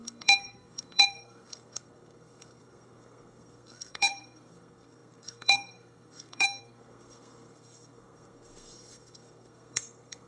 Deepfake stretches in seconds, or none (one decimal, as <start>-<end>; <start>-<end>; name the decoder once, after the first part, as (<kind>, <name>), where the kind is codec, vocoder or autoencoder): 0.0-10.3 (codec, SNAC)